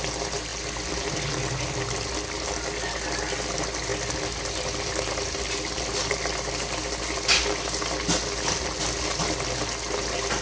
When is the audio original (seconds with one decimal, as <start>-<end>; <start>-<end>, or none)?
0.0-0.5; 1.8-10.4